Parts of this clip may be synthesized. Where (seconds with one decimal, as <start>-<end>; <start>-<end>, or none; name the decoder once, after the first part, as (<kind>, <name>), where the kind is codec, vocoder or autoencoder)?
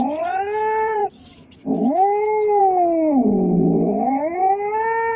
1.0-2.6 (autoencoder, DAC-VAE)